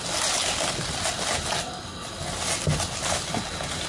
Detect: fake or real real